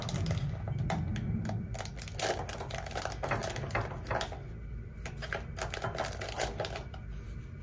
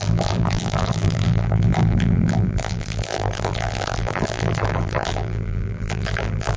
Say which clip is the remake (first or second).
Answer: second